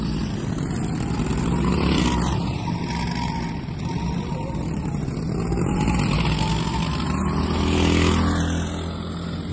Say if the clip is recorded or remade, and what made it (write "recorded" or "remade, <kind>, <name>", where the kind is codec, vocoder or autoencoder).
recorded